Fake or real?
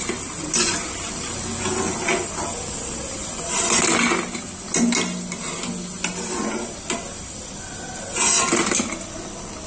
real